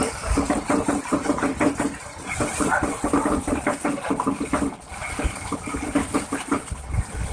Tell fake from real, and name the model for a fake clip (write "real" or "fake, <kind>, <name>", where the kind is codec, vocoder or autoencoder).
real